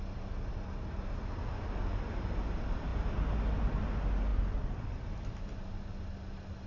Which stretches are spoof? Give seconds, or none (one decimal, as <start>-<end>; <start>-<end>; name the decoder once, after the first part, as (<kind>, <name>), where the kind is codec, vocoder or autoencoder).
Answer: 4.3-5.2 (vocoder, BigVGAN v2)